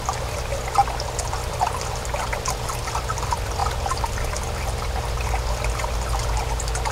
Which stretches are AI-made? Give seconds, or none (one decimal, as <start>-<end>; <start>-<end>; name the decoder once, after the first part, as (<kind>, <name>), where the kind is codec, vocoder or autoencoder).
none